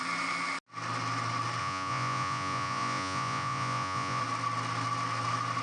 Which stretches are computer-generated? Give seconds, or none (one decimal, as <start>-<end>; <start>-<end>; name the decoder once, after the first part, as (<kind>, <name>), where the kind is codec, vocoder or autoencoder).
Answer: 1.6-4.2 (vocoder, Vocos)